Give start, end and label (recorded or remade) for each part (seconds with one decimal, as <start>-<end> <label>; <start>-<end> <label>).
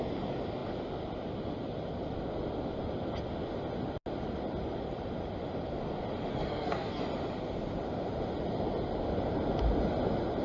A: 0.0-6.3 recorded; 6.3-7.0 remade; 7.0-10.4 recorded